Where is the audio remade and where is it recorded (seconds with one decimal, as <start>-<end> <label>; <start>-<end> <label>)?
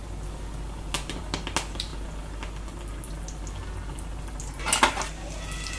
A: 0.0-5.8 recorded